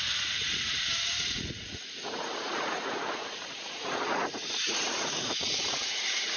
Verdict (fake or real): fake